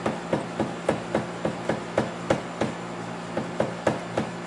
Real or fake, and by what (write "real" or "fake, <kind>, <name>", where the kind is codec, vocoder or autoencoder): real